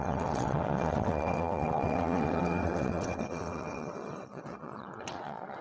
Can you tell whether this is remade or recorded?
remade